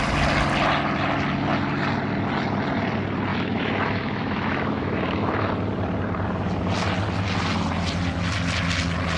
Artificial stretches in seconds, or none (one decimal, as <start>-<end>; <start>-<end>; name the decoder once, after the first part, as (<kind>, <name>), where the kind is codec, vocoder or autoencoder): 3.3-5.5 (autoencoder, DAC-VAE)